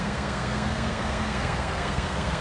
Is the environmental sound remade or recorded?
remade